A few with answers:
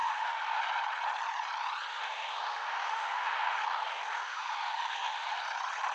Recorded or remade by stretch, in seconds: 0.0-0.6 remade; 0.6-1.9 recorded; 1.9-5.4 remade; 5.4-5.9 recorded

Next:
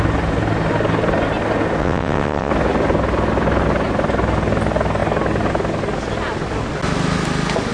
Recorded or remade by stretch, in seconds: 0.0-1.8 recorded; 1.8-2.5 remade; 2.5-7.7 recorded